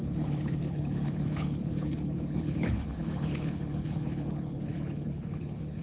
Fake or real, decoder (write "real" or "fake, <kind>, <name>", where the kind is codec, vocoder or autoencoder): fake, codec, HILCodec